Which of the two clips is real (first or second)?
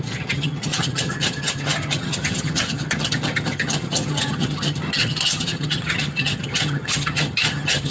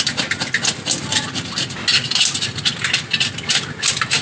second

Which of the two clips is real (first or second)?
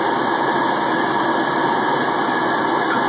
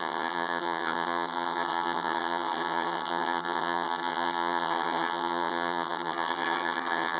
first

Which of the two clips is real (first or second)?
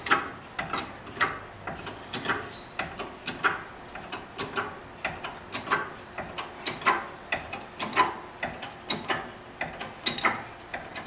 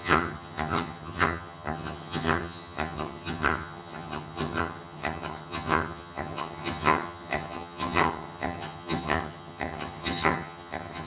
first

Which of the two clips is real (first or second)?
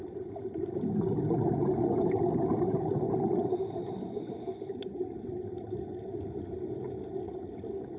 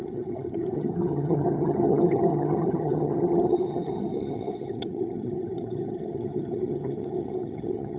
first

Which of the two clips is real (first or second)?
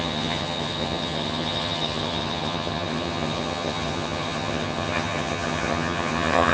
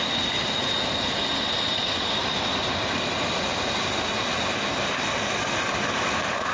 second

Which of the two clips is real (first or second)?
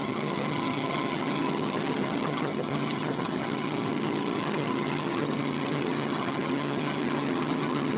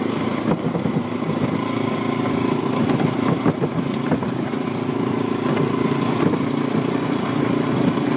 second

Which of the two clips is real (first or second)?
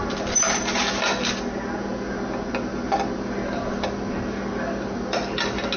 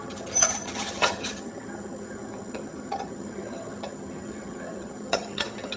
first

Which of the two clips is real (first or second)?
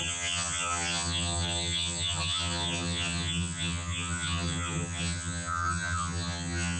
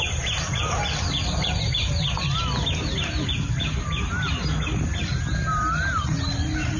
second